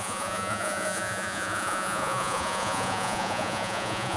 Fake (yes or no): yes